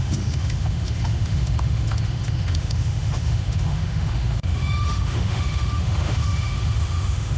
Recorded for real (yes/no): no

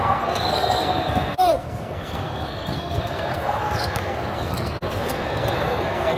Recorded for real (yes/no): no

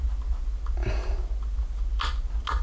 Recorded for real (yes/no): yes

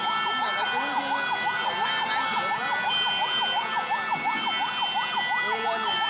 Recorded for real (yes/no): yes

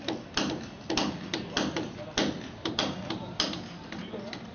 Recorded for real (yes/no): yes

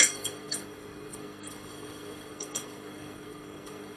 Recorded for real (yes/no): no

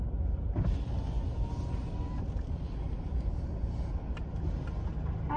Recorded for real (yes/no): yes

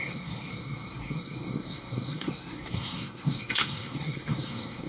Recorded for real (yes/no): no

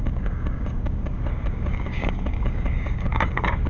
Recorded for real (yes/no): no